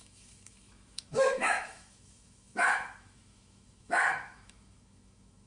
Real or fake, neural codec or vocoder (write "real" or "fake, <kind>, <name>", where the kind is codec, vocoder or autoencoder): fake, autoencoder, DAC-VAE